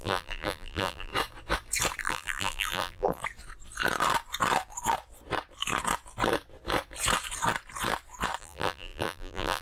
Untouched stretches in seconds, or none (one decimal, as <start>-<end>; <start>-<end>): 1.1-2.0; 3.2-8.4